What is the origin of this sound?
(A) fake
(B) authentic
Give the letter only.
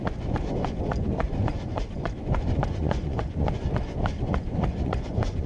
A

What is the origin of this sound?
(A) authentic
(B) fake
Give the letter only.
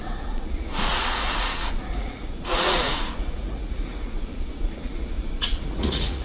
B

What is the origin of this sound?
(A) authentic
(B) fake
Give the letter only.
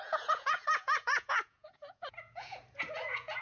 B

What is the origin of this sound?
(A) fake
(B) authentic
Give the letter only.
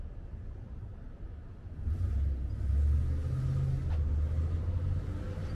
B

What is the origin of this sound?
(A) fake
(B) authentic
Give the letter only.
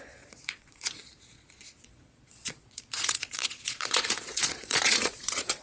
A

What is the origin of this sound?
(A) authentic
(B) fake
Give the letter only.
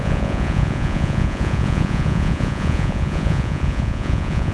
B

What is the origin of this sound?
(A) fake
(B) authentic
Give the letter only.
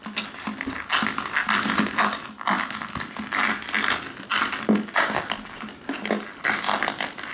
B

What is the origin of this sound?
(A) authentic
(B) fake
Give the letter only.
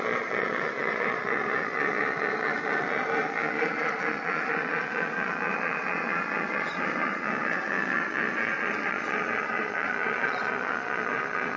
B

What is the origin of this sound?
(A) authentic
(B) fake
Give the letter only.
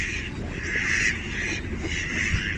A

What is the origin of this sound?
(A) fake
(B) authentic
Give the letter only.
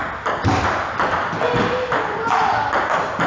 B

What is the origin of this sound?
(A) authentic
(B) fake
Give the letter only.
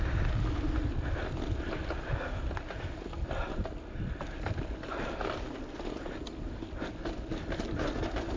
A